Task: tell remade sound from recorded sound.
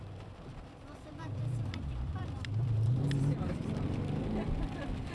remade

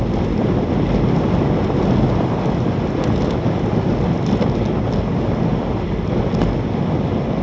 recorded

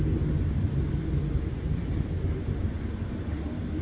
recorded